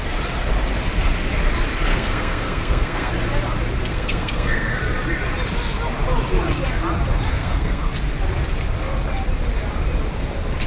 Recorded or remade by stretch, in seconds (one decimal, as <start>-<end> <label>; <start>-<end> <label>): 0.0-1.9 recorded; 1.9-3.1 remade; 3.1-3.9 recorded; 3.9-4.8 remade; 4.8-7.3 recorded; 7.3-7.9 remade; 7.9-10.7 recorded